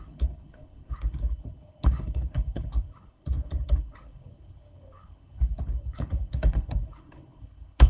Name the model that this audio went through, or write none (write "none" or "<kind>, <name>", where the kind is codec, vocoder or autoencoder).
codec, HILCodec